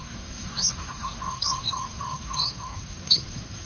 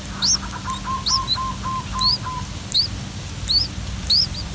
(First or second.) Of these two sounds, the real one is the second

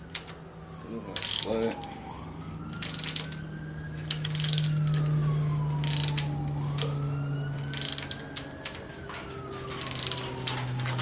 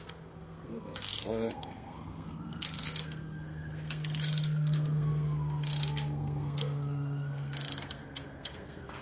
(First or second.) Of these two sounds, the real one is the first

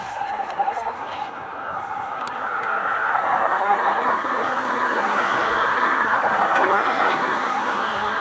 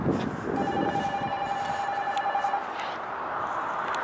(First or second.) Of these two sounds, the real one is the second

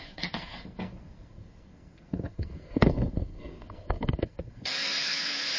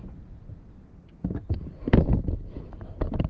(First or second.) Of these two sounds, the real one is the second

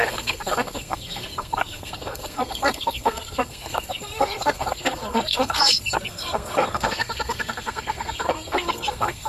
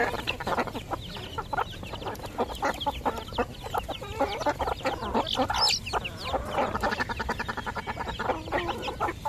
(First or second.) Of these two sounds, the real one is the second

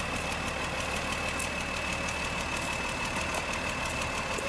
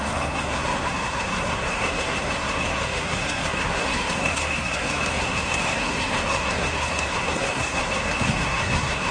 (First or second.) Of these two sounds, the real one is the first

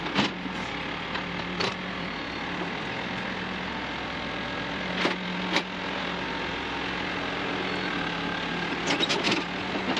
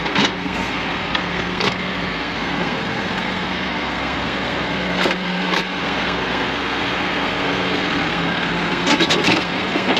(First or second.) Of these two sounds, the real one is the first